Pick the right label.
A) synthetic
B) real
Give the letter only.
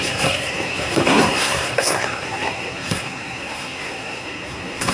A